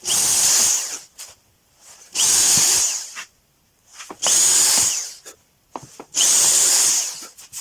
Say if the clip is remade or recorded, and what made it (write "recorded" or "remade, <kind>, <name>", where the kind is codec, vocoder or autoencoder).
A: remade, vocoder, BigVGAN v2